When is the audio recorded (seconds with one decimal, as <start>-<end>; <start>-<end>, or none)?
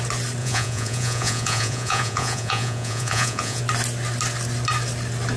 0.0-0.4; 3.6-5.4